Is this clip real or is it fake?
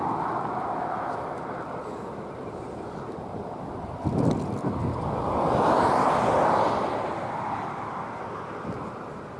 real